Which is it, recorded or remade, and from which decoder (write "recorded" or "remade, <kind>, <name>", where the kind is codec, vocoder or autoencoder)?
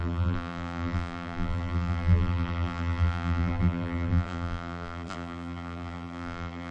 remade, vocoder, BigVGAN v2